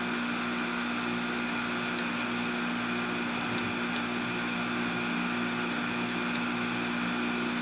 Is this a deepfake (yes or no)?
no